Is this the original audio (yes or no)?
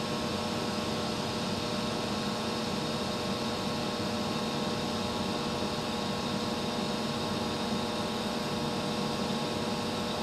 yes